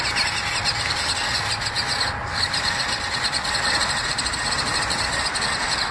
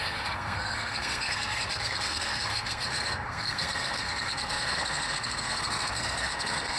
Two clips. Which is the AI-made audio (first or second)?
second